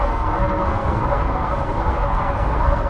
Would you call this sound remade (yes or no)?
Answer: yes